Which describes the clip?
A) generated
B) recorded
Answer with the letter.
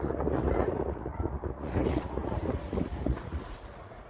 A